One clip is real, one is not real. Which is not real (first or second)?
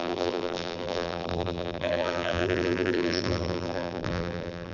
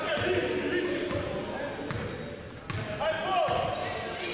first